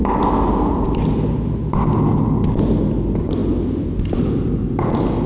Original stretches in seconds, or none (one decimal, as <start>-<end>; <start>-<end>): 0.0-5.3